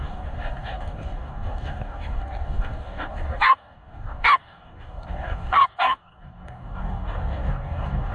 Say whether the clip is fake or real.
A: fake